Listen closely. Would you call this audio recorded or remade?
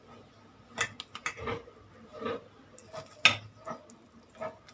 recorded